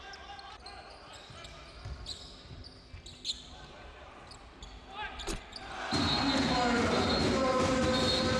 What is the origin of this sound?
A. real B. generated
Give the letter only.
A